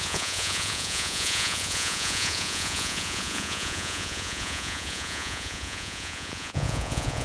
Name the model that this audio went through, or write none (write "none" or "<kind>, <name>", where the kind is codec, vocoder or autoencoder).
vocoder, Vocos